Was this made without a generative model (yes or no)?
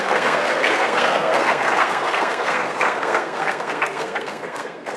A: no